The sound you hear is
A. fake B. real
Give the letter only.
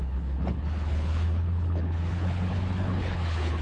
A